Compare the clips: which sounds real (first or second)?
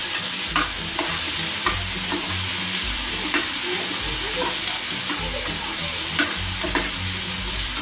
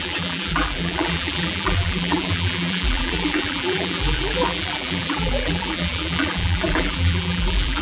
first